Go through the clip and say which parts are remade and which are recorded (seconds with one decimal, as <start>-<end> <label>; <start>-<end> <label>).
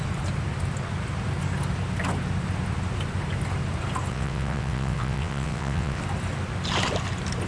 0.0-4.1 recorded; 4.1-6.0 remade; 6.0-7.5 recorded